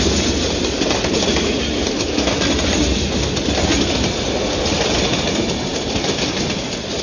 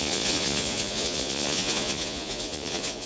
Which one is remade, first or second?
second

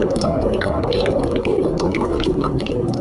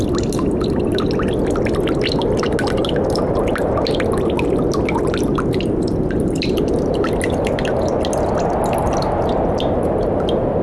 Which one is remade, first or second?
first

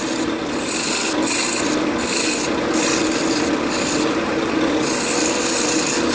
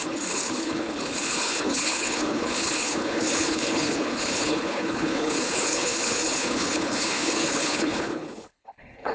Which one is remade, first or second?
second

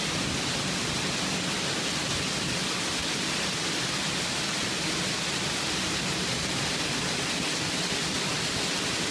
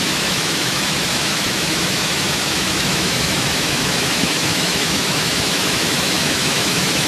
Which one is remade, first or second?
second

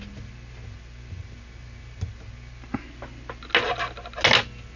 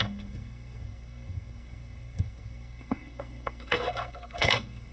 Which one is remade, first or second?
second